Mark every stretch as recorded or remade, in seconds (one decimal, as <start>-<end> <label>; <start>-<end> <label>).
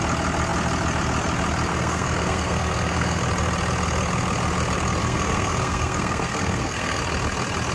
0.0-1.7 recorded; 1.7-3.2 remade; 3.2-5.0 recorded; 5.0-7.0 remade; 7.0-7.7 recorded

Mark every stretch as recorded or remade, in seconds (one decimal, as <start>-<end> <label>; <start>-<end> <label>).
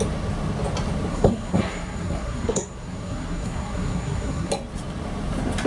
0.0-1.1 recorded; 1.1-4.5 remade; 4.5-5.7 recorded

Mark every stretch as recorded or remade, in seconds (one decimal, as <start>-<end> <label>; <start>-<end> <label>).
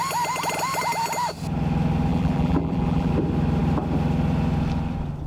0.0-2.1 recorded; 2.1-3.1 remade; 3.1-5.3 recorded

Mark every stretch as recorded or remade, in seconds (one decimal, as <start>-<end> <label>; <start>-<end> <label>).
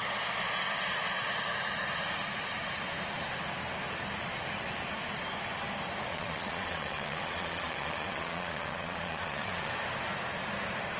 0.0-6.1 recorded; 6.1-9.7 remade; 9.7-11.0 recorded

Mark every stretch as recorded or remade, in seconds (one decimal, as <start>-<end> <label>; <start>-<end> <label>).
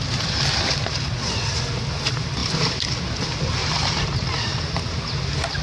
0.0-3.6 recorded; 3.6-4.7 remade; 4.7-5.6 recorded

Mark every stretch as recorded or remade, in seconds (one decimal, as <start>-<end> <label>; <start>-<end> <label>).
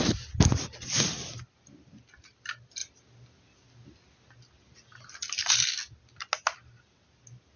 0.0-7.6 recorded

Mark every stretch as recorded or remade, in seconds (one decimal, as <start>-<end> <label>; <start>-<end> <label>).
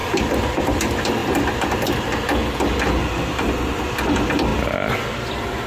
0.0-5.7 recorded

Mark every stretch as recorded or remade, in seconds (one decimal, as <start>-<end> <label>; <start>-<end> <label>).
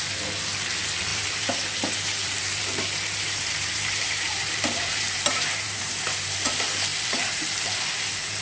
0.0-1.1 recorded; 1.1-5.9 remade; 5.9-6.9 recorded; 6.9-8.4 remade